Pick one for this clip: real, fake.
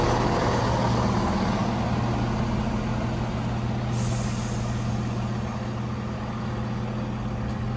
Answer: real